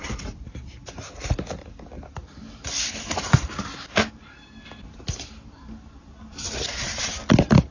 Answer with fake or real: real